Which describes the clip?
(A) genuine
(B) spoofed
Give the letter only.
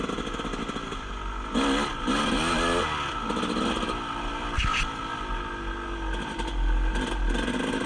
A